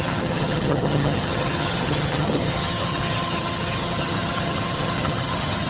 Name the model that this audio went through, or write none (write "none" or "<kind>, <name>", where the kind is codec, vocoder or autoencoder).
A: vocoder, HiFi-GAN